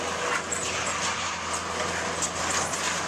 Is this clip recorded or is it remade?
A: recorded